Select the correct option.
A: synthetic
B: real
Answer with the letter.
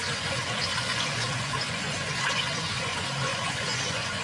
A